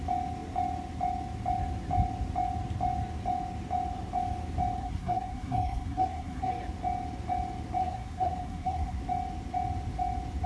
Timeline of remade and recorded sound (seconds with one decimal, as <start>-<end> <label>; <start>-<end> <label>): 0.0-4.8 recorded; 4.8-6.5 remade; 6.5-7.8 recorded; 7.8-9.0 remade; 9.0-10.5 recorded